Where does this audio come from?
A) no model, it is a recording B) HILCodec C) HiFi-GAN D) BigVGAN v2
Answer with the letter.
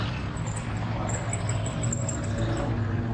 A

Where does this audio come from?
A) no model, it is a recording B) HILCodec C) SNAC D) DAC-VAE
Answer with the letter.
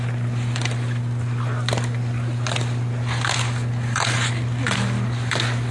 A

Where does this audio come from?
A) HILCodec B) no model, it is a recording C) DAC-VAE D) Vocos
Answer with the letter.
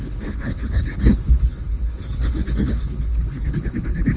A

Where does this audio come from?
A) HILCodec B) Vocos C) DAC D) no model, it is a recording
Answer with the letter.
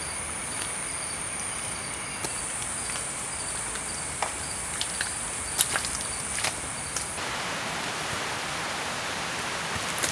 D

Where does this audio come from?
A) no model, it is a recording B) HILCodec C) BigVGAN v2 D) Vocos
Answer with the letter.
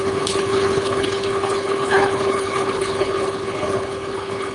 B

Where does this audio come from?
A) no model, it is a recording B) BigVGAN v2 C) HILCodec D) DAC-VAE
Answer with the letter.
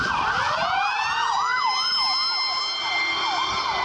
A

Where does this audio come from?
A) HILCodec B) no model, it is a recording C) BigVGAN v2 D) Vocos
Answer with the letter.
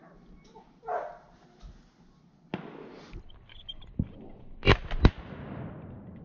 B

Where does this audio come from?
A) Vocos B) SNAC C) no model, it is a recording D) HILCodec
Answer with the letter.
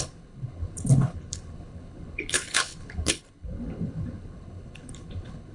D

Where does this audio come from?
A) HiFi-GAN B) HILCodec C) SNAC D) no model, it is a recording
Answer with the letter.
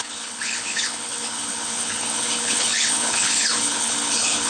B